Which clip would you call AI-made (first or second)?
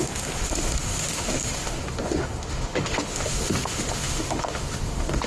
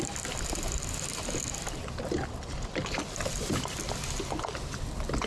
first